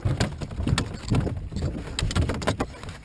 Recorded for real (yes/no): yes